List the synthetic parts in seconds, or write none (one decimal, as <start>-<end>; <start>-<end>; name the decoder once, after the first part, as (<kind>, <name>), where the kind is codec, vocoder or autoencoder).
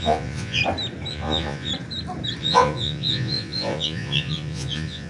0.0-0.6 (vocoder, Vocos); 1.1-1.7; 2.4-5.1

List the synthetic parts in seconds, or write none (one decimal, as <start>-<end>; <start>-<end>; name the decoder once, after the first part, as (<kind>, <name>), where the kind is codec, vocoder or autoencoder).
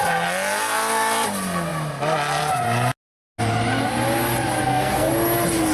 4.6-5.1 (codec, SNAC)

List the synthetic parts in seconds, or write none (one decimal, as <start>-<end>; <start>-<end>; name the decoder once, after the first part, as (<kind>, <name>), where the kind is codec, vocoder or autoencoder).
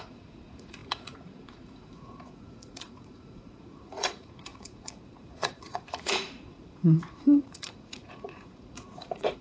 0.0-9.4 (vocoder, Vocos)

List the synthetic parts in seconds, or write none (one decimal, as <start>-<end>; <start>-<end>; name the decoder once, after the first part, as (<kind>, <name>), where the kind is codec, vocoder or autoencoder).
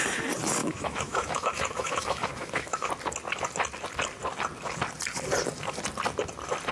0.6-2.9 (autoencoder, DAC-VAE)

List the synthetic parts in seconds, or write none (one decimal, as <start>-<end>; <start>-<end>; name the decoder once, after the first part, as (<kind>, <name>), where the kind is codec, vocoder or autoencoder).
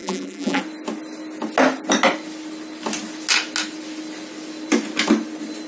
0.0-0.6 (vocoder, BigVGAN v2)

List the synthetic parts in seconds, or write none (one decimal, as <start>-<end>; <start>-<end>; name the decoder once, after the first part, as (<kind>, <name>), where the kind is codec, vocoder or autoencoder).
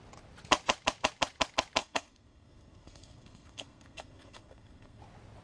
1.8-5.0 (codec, SNAC)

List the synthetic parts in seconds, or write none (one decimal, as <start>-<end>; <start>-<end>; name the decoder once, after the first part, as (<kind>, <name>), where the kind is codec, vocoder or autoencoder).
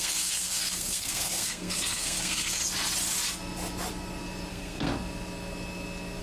0.0-2.6 (codec, SNAC); 4.5-4.9